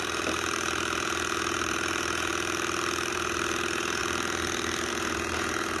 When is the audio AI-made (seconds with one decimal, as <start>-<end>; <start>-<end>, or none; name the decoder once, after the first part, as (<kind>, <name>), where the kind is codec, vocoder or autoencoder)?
0.0-2.3 (vocoder, BigVGAN v2); 3.1-4.0; 4.9-5.8